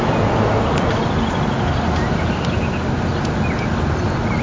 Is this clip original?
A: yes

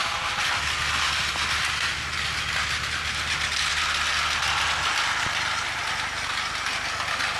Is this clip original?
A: yes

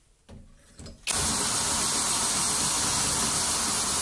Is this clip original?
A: yes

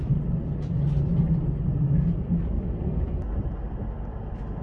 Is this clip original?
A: yes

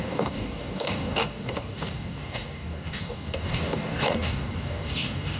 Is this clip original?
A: no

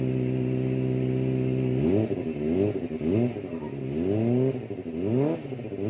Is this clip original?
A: yes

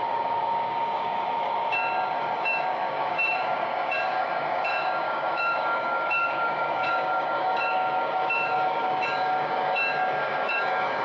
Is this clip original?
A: no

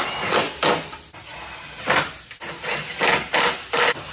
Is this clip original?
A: yes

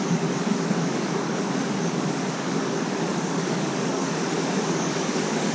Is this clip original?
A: no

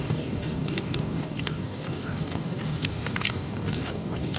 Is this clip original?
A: no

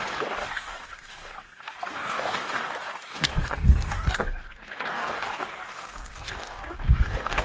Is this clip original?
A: no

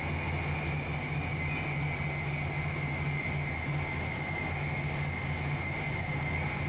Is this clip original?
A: yes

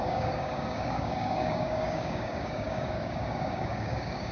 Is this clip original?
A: no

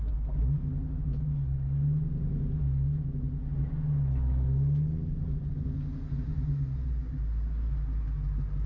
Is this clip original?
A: yes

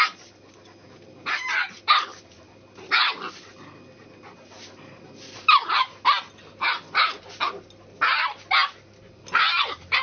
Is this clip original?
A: yes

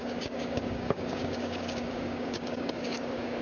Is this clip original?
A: no